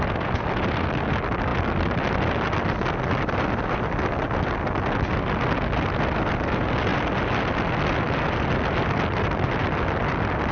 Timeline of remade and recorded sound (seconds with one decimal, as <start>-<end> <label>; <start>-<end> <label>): 0.0-10.5 recorded